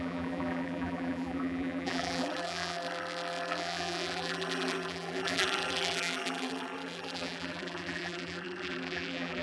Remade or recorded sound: remade